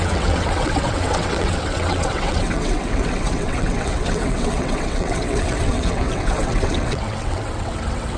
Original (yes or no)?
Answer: no